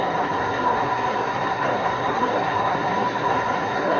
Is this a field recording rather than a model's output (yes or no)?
no